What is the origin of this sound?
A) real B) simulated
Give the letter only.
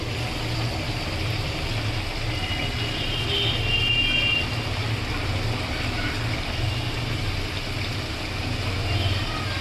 A